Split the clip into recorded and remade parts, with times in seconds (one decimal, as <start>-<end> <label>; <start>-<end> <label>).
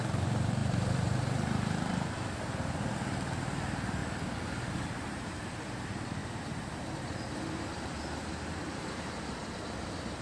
0.0-6.2 remade; 6.2-6.8 recorded; 6.8-7.7 remade; 7.7-8.6 recorded; 8.6-10.2 remade